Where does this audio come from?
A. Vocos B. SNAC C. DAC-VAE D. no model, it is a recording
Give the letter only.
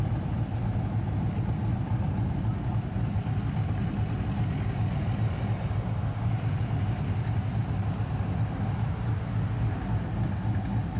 D